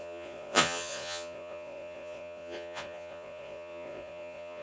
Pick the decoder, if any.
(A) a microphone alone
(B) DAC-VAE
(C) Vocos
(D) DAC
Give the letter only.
C